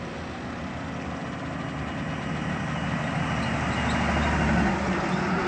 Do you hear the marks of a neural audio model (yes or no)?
no